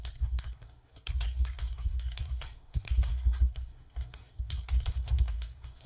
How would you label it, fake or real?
fake